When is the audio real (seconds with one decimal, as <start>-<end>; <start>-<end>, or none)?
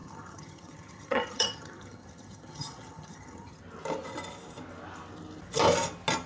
3.6-6.3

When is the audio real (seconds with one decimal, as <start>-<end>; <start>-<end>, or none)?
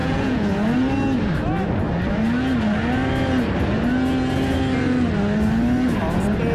0.5-6.5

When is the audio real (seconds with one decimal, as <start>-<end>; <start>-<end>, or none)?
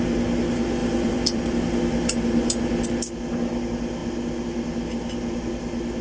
0.0-0.8; 2.6-6.0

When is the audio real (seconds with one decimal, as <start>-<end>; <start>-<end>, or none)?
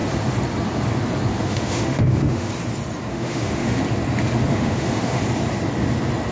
0.0-1.3; 2.5-3.1; 3.8-4.5; 5.2-6.3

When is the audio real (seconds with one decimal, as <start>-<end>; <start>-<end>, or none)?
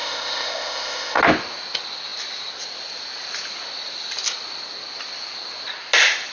1.2-6.3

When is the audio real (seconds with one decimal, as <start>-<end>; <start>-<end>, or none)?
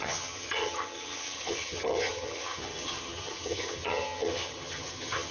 none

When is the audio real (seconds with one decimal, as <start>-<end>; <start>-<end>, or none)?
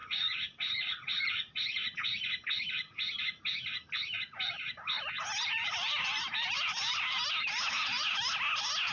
2.5-8.9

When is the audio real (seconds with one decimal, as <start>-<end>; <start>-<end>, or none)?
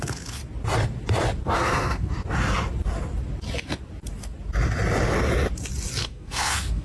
0.4-1.4; 2.1-6.0